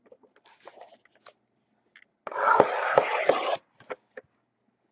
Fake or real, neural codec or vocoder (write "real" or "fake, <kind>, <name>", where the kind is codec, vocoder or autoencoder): real